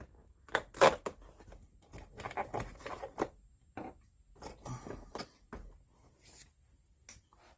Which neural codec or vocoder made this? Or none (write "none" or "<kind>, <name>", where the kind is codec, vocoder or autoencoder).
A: none